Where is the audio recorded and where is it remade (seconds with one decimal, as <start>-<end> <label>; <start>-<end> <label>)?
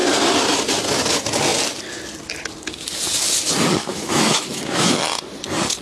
0.0-3.8 recorded; 3.8-5.0 remade; 5.0-5.8 recorded